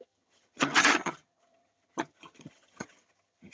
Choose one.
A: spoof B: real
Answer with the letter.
A